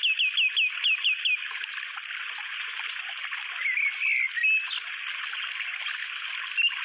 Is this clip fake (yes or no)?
no